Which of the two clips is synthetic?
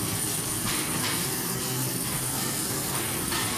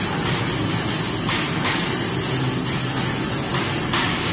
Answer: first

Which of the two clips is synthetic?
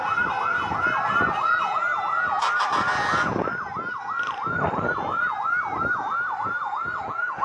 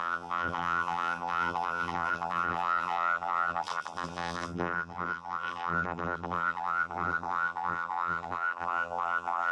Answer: second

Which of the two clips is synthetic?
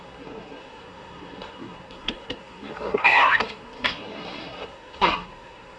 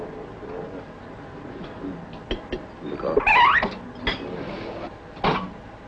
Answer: first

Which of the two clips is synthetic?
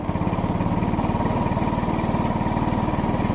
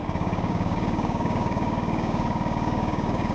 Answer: second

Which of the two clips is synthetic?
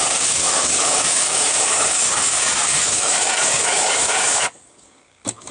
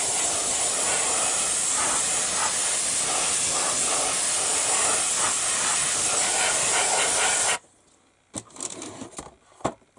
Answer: first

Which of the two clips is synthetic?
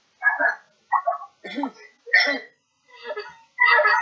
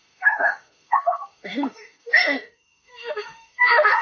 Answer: second